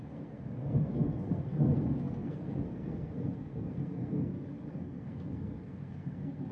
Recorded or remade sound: remade